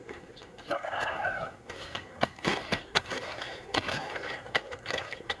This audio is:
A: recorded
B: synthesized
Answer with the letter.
B